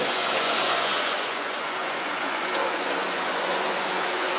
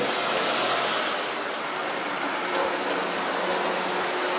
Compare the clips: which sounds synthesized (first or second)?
first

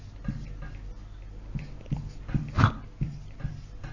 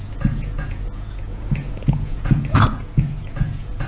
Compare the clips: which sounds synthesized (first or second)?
second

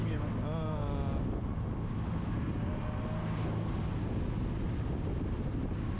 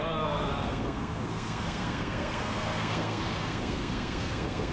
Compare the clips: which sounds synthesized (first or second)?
second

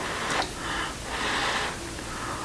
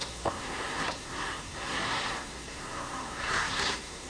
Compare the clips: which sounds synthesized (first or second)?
second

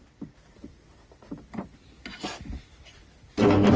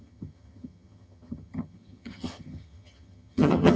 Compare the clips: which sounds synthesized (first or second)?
second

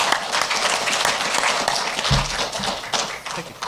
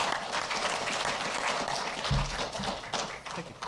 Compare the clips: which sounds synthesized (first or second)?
second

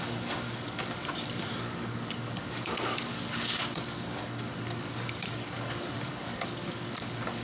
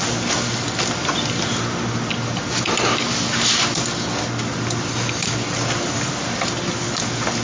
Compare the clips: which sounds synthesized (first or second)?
first